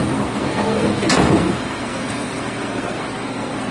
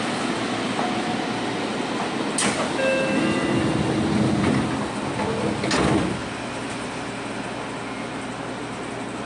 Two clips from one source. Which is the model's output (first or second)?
first